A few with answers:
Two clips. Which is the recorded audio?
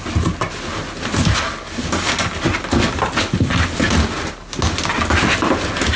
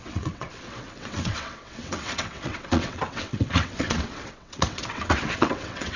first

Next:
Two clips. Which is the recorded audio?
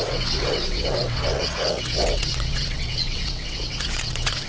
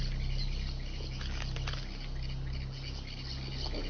second